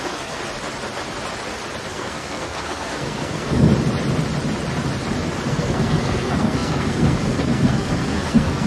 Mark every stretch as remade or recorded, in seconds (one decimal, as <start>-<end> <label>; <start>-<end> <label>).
0.0-0.4 remade; 0.4-1.9 recorded; 1.9-3.7 remade; 3.7-5.5 recorded; 5.5-8.7 remade